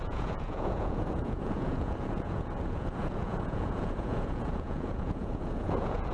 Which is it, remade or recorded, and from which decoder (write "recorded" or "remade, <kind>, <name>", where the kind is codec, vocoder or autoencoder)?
remade, vocoder, Vocos